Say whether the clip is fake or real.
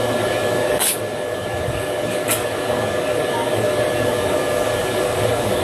fake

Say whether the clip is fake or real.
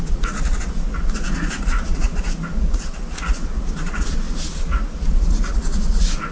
fake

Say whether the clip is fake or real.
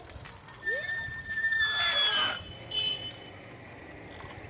real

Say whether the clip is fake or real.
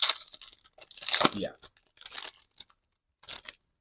real